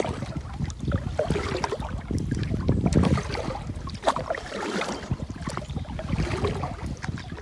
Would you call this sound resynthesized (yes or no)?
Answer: no